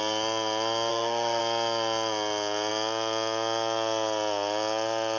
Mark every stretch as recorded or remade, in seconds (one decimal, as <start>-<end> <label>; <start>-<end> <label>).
0.0-0.9 recorded; 0.9-1.4 remade; 1.4-5.2 recorded